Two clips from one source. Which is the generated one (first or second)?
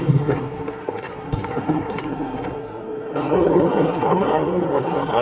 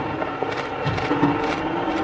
first